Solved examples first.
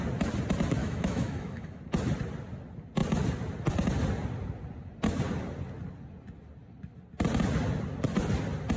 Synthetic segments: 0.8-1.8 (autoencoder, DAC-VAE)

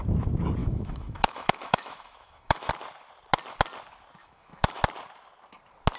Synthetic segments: 0.6-2.7 (autoencoder, DAC-VAE); 4.2-4.8

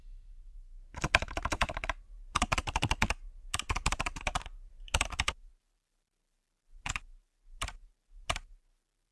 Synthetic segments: none

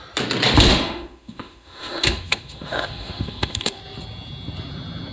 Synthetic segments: 0.7-3.8 (autoencoder, DAC-VAE)

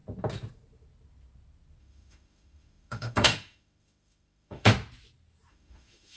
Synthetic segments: 1.8-4.7 (autoencoder, DAC-VAE); 5.5-6.2

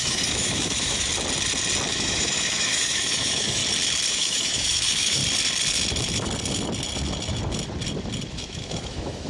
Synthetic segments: 0.0-1.1 (autoencoder, DAC-VAE); 1.9-3.6; 4.1-5.2; 8.3-9.3

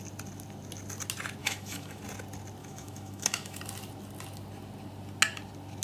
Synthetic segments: 1.4-2.0 (autoencoder, DAC-VAE); 2.6-3.6